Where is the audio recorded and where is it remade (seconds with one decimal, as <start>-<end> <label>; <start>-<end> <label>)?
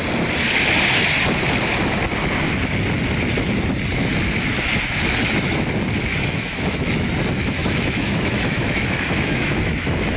0.0-6.1 recorded; 6.1-7.1 remade; 7.1-7.6 recorded; 7.6-10.2 remade